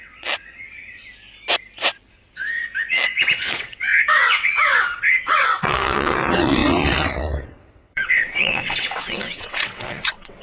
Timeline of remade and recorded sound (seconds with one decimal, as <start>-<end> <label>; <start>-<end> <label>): 0.0-1.0 remade; 1.0-2.1 recorded; 2.1-10.4 remade